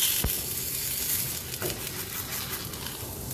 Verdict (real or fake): real